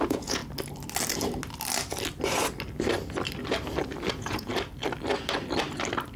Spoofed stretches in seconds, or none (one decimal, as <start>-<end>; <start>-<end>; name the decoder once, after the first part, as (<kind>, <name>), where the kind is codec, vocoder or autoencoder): 0.0-0.4 (vocoder, Vocos); 4.1-4.5